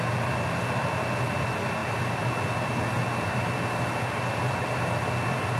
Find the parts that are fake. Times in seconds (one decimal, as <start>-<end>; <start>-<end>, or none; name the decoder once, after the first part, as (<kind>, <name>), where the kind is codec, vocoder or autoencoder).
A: none